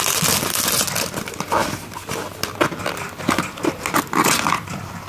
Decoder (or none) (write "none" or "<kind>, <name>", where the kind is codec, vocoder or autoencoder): none